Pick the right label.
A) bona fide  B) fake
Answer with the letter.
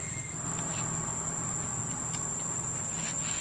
A